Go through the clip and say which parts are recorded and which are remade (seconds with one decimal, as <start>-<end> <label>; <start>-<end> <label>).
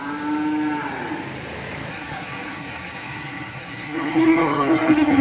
0.0-1.9 recorded; 1.9-5.2 remade